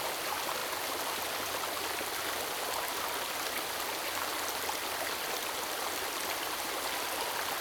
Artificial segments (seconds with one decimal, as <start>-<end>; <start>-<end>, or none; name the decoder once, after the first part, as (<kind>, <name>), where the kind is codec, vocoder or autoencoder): none